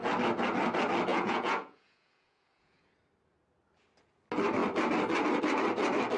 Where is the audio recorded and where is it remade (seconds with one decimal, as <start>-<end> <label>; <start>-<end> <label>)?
0.0-1.1 recorded; 1.1-2.9 remade; 2.9-6.2 recorded